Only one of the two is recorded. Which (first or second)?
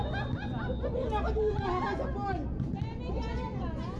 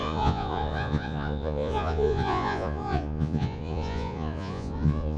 first